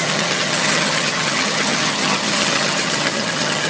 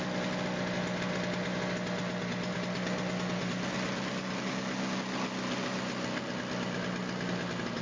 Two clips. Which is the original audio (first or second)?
second